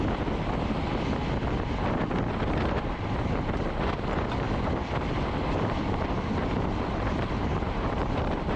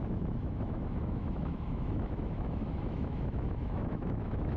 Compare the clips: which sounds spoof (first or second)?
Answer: second